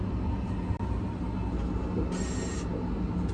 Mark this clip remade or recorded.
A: recorded